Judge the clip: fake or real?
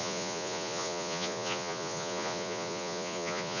fake